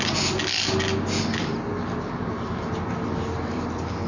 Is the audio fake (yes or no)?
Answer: no